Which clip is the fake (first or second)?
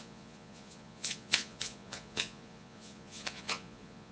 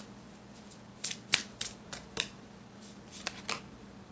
first